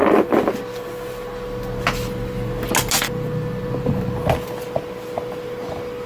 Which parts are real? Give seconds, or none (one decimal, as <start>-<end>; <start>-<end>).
0.0-6.1